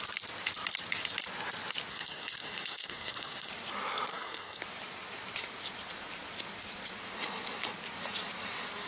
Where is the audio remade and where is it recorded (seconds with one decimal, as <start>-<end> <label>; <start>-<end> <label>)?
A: 0.0-1.9 recorded; 1.9-3.5 remade; 3.5-4.1 recorded; 4.1-4.6 remade; 4.6-8.9 recorded